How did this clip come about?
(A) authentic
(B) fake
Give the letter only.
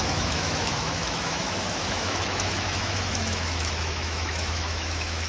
B